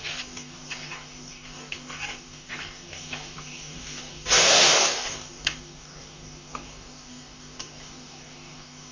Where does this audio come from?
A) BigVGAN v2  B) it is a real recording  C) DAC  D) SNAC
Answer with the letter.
C